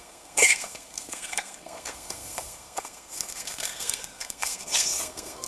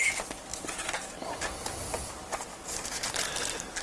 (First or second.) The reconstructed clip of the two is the first